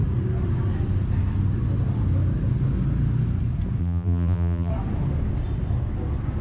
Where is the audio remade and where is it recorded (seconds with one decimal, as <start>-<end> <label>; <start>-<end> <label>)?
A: 0.0-3.8 recorded; 3.8-4.7 remade; 4.7-6.4 recorded